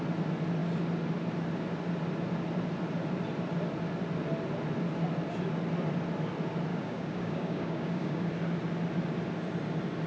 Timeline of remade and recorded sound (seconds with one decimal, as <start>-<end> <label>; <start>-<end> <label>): 0.0-6.7 recorded; 6.7-8.3 remade; 8.3-10.1 recorded